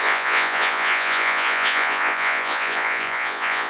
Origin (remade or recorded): remade